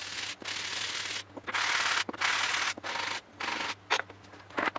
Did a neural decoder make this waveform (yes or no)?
no